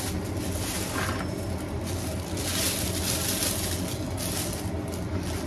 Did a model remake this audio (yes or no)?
no